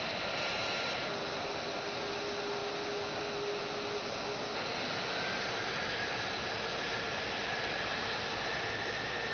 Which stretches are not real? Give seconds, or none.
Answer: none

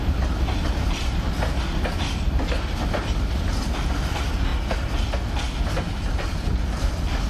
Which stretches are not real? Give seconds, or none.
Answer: none

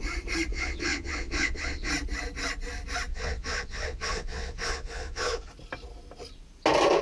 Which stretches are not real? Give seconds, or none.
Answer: 0.5-1.9 (vocoder, Vocos); 3.1-5.5

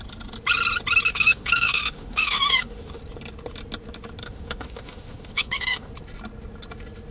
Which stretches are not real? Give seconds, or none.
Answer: 1.1-3.0 (autoencoder, DAC-VAE); 4.2-5.9

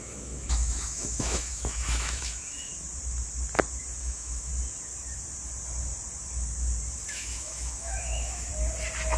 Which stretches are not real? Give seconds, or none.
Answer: 0.0-2.7 (autoencoder, DAC-VAE); 4.0-4.5; 7.1-8.5

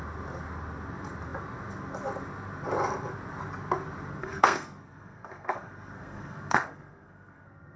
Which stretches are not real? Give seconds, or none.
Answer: 4.2-7.8 (codec, SNAC)

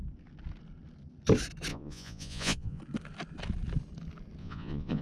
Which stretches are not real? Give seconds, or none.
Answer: 1.7-2.8 (vocoder, Vocos); 4.4-5.0